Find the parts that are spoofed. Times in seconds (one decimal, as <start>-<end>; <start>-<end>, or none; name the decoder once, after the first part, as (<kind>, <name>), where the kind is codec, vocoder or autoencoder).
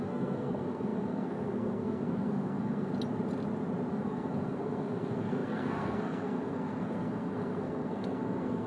0.0-2.9 (codec, SNAC); 3.9-8.7